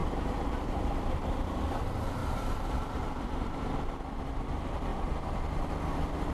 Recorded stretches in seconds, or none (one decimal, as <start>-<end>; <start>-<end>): 1.6-2.2; 3.9-4.9; 5.4-6.3